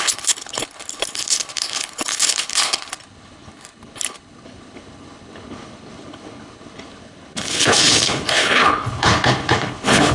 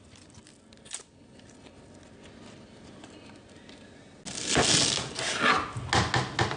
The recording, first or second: second